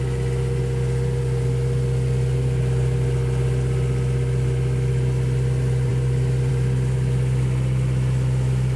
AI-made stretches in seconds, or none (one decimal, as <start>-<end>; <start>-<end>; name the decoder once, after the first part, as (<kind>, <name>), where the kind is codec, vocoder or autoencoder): none